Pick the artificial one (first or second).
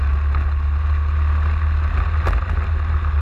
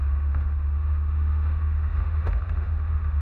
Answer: second